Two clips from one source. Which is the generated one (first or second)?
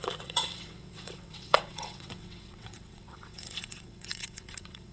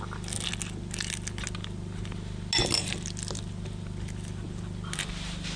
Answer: first